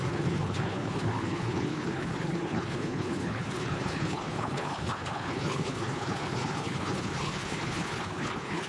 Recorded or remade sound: remade